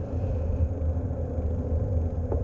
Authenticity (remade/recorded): recorded